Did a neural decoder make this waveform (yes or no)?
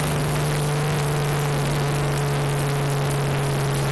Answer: no